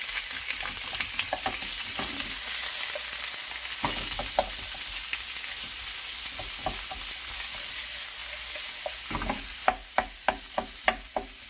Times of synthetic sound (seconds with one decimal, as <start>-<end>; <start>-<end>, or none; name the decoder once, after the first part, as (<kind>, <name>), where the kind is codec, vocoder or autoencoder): none